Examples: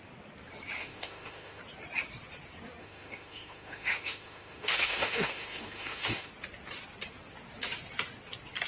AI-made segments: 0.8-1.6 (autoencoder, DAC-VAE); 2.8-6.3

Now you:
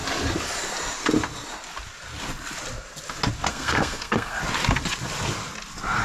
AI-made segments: 3.5-4.4 (codec, SNAC)

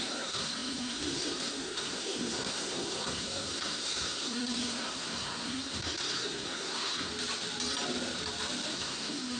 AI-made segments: 0.0-7.1 (codec, SNAC); 8.7-9.4